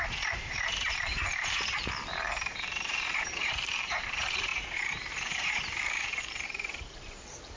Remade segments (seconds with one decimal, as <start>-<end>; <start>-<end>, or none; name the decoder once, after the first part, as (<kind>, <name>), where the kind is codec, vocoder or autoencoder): 0.0-7.6 (vocoder, BigVGAN v2)